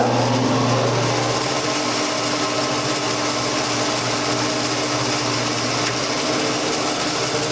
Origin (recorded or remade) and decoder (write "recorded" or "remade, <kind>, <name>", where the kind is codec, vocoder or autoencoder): recorded